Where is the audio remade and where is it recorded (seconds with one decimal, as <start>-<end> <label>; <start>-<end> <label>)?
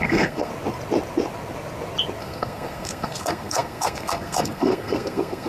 0.0-0.5 remade; 0.5-2.2 recorded; 2.2-5.5 remade